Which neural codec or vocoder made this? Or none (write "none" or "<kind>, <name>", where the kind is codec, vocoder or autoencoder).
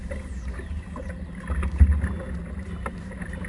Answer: none